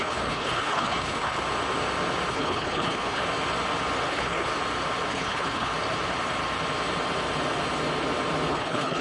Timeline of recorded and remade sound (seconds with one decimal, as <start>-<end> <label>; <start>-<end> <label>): 0.0-1.4 remade; 1.4-2.3 recorded; 2.3-3.2 remade; 3.2-4.1 recorded; 4.1-4.5 remade; 4.5-5.1 recorded; 5.1-5.7 remade; 5.7-8.5 recorded; 8.5-9.0 remade